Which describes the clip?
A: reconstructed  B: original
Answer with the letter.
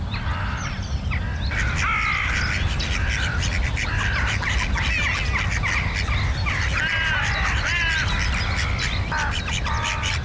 B